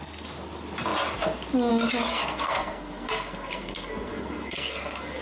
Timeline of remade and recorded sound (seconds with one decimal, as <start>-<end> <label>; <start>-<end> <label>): 0.0-2.1 recorded; 2.1-5.2 remade